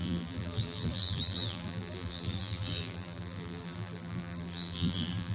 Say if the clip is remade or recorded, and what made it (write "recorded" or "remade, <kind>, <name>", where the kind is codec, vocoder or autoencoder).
remade, vocoder, BigVGAN v2